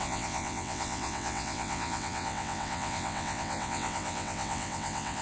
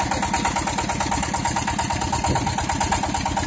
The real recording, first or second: second